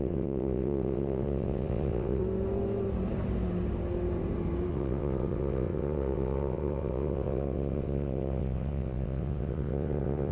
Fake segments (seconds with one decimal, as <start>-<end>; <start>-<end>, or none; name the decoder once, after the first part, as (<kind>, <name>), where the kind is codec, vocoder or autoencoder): 0.0-2.2 (vocoder, WaveNeXt); 4.7-10.3